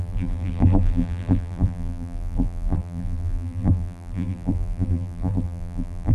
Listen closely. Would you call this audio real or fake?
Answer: fake